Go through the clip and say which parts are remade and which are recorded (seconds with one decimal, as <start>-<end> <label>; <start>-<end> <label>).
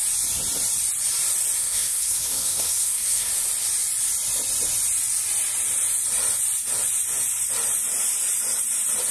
0.0-1.6 recorded; 1.6-3.3 remade; 3.3-9.1 recorded